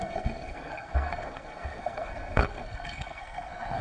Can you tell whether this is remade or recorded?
remade